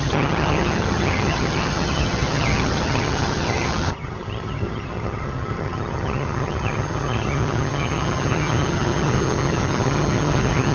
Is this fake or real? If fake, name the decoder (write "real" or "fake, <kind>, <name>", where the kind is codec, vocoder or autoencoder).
fake, vocoder, HiFi-GAN